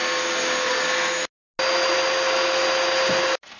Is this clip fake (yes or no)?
no